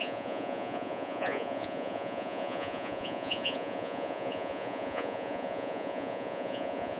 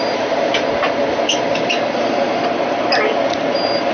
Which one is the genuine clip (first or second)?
second